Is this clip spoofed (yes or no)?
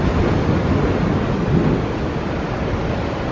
no